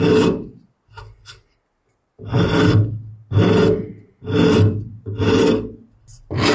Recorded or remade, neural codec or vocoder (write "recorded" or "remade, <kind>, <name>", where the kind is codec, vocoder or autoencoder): recorded